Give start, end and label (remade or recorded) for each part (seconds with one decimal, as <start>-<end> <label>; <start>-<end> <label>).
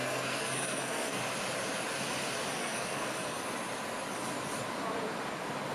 0.0-1.2 remade; 1.2-2.5 recorded; 2.5-3.4 remade; 3.4-5.7 recorded